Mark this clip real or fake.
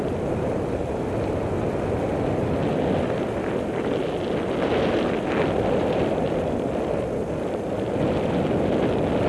real